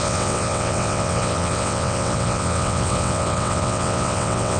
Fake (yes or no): yes